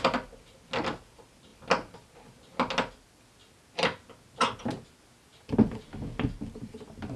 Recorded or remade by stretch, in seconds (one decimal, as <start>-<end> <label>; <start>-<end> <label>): 0.0-7.2 recorded